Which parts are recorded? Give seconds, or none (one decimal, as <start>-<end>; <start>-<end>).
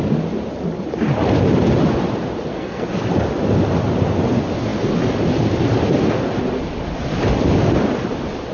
0.0-2.5; 3.0-8.5